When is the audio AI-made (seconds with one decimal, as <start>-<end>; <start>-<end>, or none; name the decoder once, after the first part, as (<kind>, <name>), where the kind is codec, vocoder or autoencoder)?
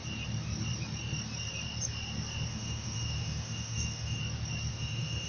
2.5-4.2 (autoencoder, DAC-VAE); 4.7-5.3